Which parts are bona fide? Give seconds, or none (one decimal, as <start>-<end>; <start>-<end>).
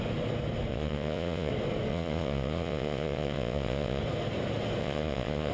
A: 0.0-0.7; 1.5-1.9; 4.0-4.8